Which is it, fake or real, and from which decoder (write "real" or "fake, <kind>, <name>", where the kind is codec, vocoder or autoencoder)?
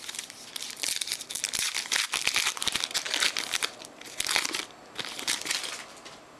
real